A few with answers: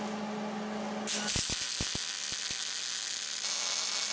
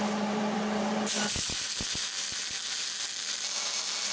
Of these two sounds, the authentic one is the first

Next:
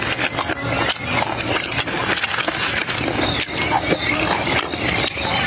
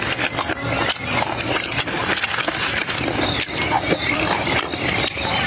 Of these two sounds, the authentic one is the first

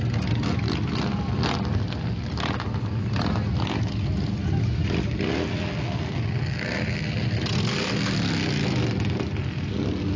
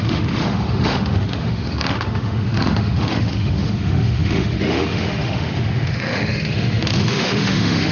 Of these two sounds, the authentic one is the first